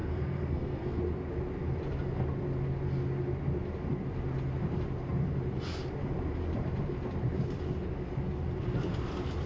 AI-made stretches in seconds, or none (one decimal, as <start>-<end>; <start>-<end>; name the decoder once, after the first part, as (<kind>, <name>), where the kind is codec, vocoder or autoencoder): 0.0-1.0 (codec, SNAC)